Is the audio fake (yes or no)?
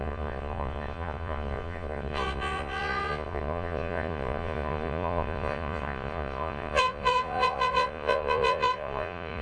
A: yes